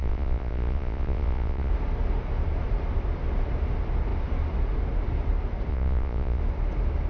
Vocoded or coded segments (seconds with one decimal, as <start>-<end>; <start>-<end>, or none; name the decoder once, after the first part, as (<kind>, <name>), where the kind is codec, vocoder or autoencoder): 0.0-1.7 (vocoder, Vocos); 5.7-6.4